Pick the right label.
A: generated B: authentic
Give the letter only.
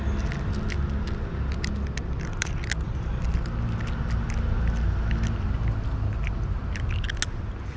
B